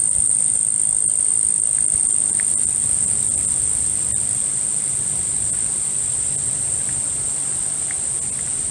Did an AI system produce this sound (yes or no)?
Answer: no